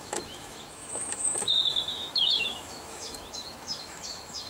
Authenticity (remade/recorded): remade